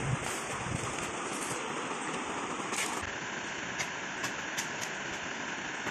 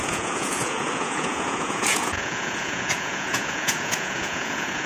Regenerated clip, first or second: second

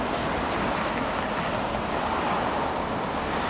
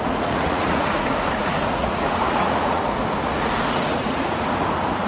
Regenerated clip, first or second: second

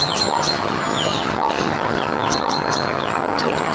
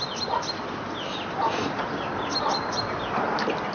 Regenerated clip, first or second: first